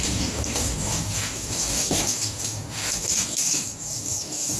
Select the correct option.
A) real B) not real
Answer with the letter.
B